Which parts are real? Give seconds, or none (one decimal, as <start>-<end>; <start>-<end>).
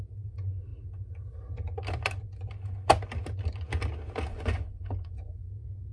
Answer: 0.0-4.3; 5.5-5.9